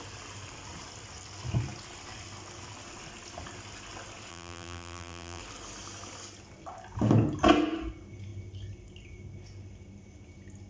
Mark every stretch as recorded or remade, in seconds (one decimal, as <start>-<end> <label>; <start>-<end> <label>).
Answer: 0.0-4.3 recorded; 4.3-5.4 remade; 5.4-10.7 recorded